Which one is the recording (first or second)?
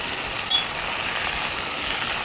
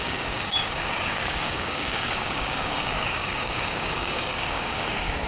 first